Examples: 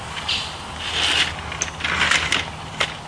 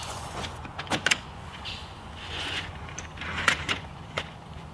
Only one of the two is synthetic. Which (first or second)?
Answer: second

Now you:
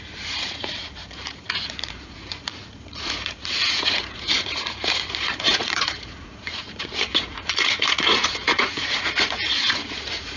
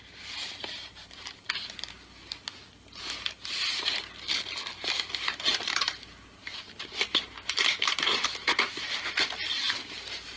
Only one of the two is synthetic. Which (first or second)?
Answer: first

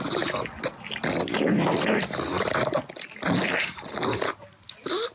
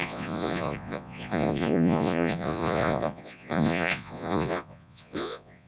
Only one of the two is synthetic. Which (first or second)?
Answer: second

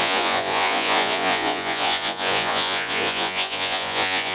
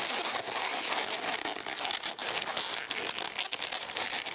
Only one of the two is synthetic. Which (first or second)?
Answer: first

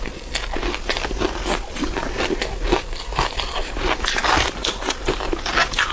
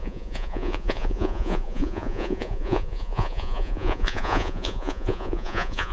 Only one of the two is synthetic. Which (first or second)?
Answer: second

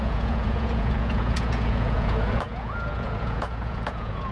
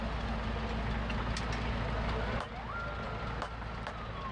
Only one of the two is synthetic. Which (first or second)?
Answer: first